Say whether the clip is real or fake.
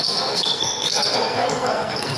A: fake